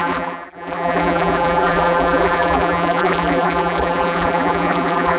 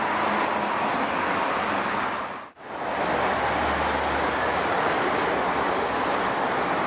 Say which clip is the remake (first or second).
first